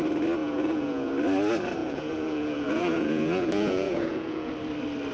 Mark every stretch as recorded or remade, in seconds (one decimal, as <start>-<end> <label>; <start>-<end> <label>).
0.0-0.4 recorded; 0.4-1.1 remade; 1.1-1.8 recorded; 1.8-4.5 remade; 4.5-5.1 recorded